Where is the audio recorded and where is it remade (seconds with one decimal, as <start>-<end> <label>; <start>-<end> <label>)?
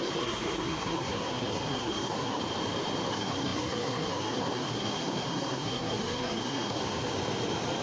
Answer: 0.0-2.4 remade; 2.4-3.1 recorded; 3.1-6.8 remade; 6.8-7.8 recorded